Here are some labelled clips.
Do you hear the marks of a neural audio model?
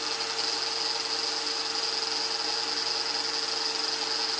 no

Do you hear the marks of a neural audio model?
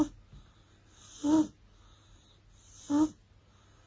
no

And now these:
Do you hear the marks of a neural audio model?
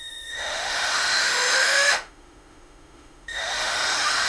yes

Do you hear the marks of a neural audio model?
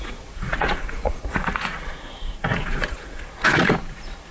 yes